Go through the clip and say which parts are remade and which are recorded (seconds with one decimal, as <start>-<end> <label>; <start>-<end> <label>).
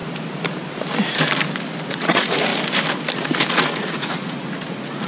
0.0-1.8 recorded; 1.8-2.5 remade; 2.5-3.5 recorded; 3.5-5.1 remade